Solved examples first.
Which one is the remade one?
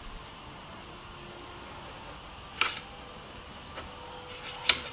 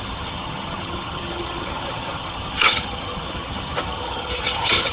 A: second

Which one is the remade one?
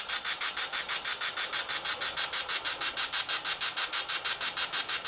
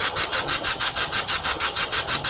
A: second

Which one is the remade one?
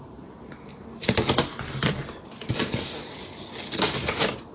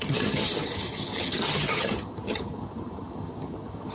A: second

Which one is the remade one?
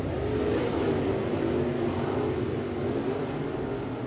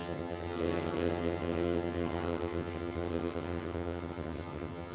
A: second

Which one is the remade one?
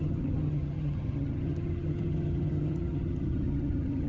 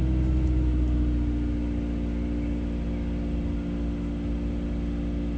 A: first